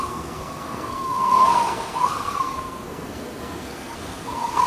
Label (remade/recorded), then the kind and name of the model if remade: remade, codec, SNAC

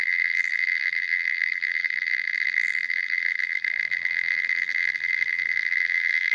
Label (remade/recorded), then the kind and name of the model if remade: remade, vocoder, BigVGAN v2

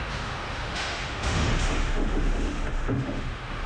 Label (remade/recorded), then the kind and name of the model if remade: remade, autoencoder, DAC-VAE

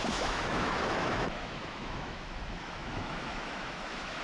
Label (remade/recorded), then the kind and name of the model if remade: remade, autoencoder, DAC-VAE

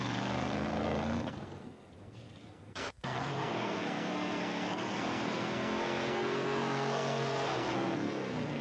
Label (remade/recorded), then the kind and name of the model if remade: remade, codec, SNAC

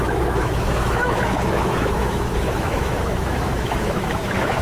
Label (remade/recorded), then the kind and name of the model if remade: remade, autoencoder, DAC-VAE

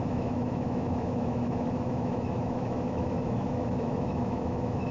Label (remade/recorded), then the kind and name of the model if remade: remade, autoencoder, DAC-VAE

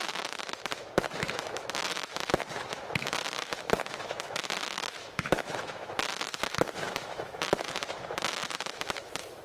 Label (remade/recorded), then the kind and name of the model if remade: remade, autoencoder, DAC-VAE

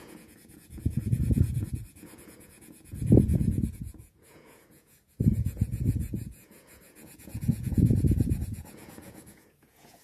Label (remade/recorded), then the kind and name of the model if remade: remade, vocoder, Vocos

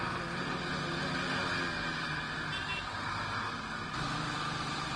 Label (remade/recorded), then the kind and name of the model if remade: recorded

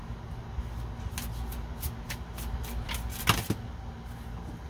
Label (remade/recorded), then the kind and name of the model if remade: recorded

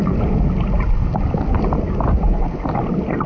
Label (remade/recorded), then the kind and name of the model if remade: recorded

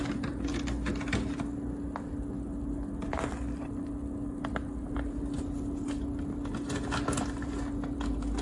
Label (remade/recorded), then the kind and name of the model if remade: recorded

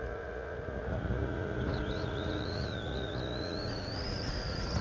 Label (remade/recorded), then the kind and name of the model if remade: remade, vocoder, Vocos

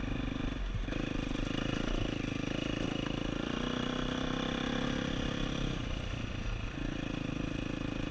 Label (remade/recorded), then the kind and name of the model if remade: recorded